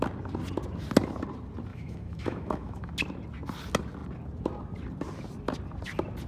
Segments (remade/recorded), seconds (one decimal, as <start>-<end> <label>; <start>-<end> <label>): 0.0-1.7 recorded; 1.7-2.9 remade; 2.9-6.3 recorded